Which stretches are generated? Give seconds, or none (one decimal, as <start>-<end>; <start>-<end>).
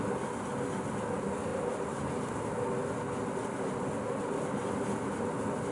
none